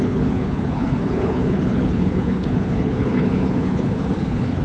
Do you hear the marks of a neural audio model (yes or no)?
yes